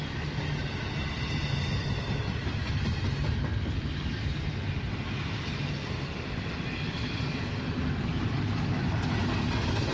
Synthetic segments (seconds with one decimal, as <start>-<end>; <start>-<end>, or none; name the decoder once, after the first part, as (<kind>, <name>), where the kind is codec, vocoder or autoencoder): none